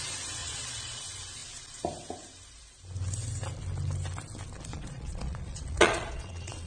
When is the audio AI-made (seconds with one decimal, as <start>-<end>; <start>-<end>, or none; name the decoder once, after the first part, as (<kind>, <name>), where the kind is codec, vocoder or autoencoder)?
0.4-1.0 (vocoder, Vocos); 4.7-6.7